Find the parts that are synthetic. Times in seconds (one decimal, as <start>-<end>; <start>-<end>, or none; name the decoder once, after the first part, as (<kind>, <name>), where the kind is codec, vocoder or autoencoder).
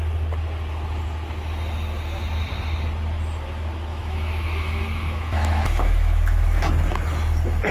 3.9-6.7 (autoencoder, DAC-VAE)